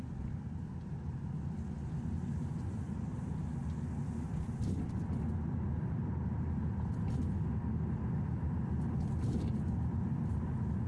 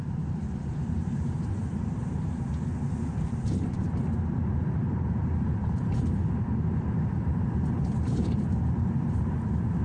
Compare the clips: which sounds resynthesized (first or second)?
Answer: second